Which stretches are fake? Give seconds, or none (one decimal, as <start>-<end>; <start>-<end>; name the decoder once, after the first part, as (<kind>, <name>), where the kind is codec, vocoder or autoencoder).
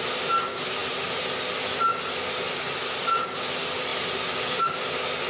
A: none